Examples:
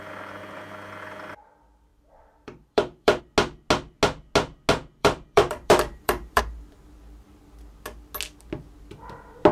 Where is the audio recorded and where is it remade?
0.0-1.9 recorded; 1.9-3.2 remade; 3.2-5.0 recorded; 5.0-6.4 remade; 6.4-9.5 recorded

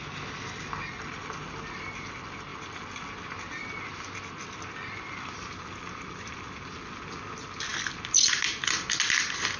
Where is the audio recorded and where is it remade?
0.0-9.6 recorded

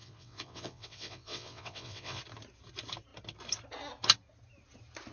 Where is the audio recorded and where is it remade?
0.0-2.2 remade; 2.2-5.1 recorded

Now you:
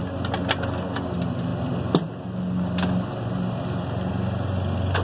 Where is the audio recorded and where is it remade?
0.0-5.0 recorded

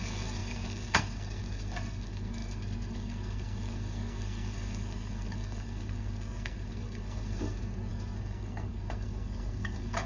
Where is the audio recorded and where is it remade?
0.0-10.1 remade